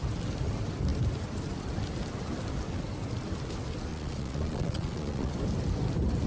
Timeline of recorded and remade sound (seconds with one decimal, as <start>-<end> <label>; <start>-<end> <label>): 0.0-3.9 recorded; 3.9-5.3 remade; 5.3-6.3 recorded